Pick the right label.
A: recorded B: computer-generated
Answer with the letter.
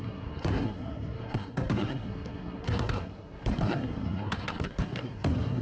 B